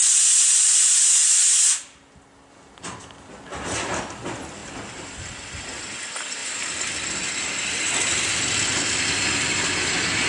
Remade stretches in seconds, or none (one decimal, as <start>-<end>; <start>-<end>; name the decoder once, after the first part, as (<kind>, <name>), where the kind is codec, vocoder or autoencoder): none